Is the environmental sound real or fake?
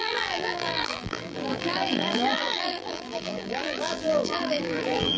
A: fake